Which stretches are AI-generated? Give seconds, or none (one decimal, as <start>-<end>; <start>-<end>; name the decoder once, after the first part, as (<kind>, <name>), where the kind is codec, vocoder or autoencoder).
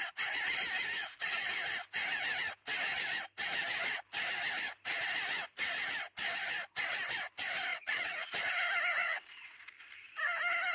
7.7-8.3 (vocoder, WaveNeXt); 9.0-9.7